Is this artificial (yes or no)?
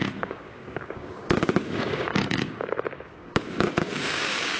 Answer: yes